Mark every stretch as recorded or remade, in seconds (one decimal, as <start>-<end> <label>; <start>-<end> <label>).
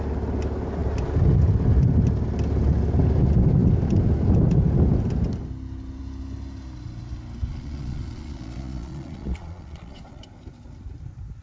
0.0-7.5 recorded; 7.5-10.2 remade; 10.2-11.4 recorded